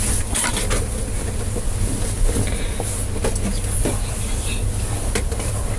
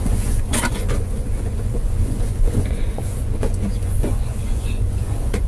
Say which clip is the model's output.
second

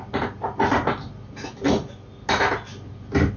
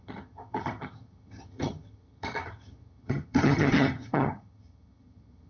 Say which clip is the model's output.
second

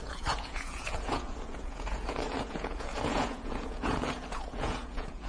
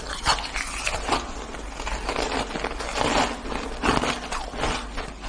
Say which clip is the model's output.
first